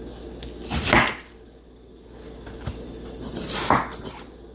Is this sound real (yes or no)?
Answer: yes